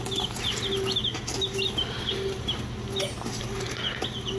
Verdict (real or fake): real